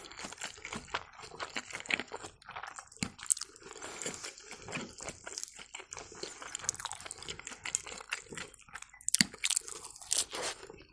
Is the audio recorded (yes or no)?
yes